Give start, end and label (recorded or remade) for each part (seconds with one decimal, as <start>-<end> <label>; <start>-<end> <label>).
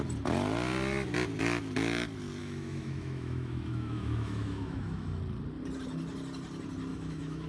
0.0-2.4 recorded; 2.4-5.2 remade; 5.2-6.9 recorded; 6.9-7.5 remade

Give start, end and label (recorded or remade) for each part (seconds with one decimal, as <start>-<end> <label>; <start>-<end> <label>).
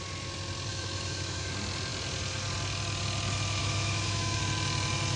0.0-0.7 recorded; 0.7-1.5 remade; 1.5-3.6 recorded; 3.6-4.4 remade; 4.4-5.2 recorded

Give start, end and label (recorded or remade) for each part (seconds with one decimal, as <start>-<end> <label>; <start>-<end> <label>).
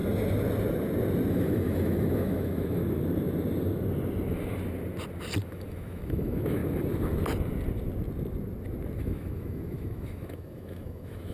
0.0-1.3 recorded; 1.3-2.8 remade; 2.8-5.4 recorded; 5.4-6.6 remade; 6.6-9.0 recorded; 9.0-11.3 remade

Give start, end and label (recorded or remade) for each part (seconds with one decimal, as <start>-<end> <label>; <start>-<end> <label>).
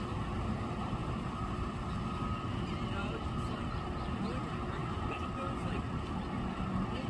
0.0-7.1 recorded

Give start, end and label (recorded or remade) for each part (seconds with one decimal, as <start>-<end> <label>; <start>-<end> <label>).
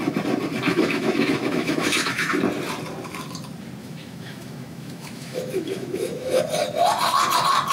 0.0-0.7 recorded; 0.7-2.4 remade; 2.4-3.8 recorded; 3.8-6.4 remade; 6.4-7.7 recorded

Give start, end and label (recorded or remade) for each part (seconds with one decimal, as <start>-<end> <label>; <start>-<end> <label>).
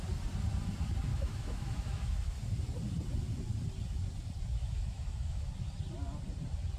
0.0-1.1 recorded; 1.1-2.4 remade; 2.4-4.6 recorded; 4.6-5.5 remade; 5.5-6.8 recorded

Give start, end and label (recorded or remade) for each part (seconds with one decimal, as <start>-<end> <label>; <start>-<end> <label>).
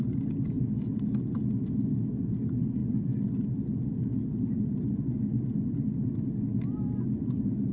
0.0-7.7 recorded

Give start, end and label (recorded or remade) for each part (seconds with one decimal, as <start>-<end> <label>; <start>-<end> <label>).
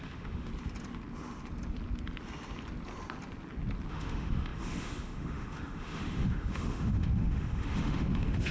0.0-0.5 remade; 0.5-3.9 recorded; 3.9-8.5 remade